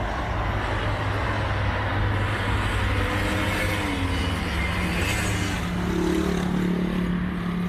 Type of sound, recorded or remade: recorded